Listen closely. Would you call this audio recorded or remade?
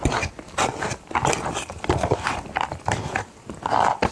recorded